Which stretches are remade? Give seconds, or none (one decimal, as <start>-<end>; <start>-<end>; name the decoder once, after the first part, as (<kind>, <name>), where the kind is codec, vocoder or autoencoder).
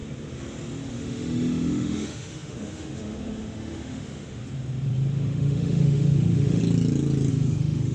0.9-4.4 (autoencoder, DAC-VAE); 5.3-6.6; 7.3-7.9